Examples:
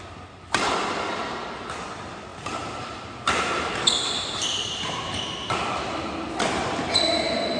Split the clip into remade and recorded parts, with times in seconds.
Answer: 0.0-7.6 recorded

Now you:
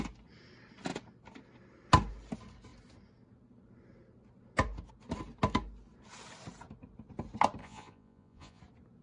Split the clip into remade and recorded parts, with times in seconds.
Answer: 0.0-7.6 recorded; 7.6-8.6 remade; 8.6-9.0 recorded

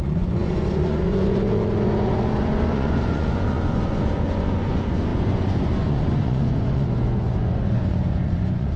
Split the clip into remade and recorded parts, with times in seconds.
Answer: 0.0-8.8 remade

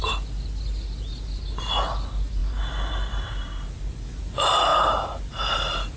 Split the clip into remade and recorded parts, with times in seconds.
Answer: 0.0-6.0 recorded

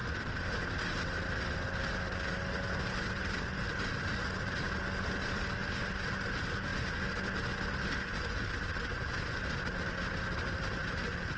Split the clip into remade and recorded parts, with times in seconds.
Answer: 0.0-11.4 recorded

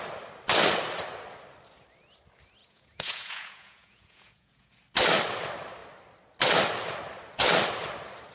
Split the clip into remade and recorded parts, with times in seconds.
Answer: 0.0-2.6 recorded; 2.6-4.7 remade; 4.7-8.3 recorded

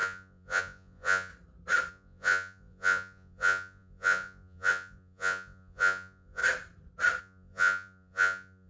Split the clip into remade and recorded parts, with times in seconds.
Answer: 0.0-1.3 remade; 1.3-1.9 recorded; 1.9-6.4 remade; 6.4-7.2 recorded; 7.2-8.7 remade